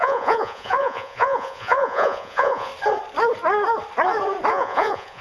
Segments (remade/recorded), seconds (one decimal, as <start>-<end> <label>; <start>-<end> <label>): 0.0-2.7 remade; 2.7-4.5 recorded; 4.5-5.2 remade